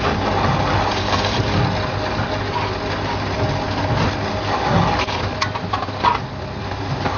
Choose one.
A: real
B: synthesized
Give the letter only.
A